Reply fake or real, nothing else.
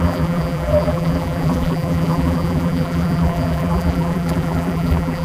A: fake